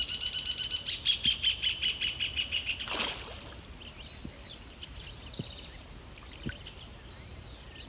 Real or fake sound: real